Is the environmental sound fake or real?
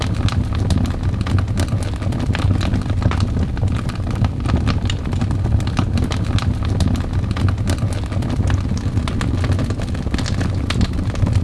real